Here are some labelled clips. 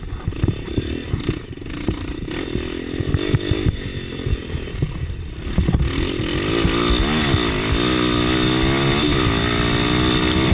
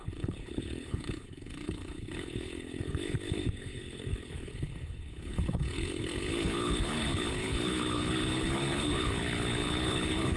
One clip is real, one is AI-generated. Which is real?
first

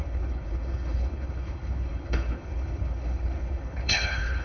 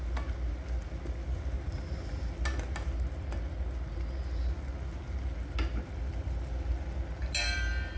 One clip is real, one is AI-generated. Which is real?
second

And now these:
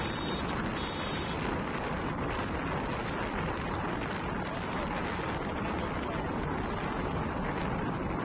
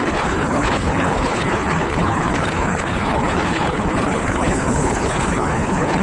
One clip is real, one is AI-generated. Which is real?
first